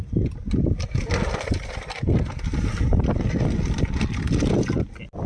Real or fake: real